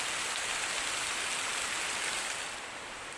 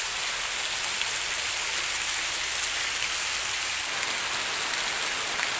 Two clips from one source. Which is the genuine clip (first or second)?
second